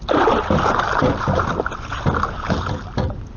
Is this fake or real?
real